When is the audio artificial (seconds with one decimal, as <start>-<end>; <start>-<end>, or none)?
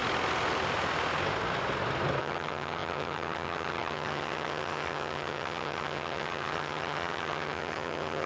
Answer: 2.2-8.3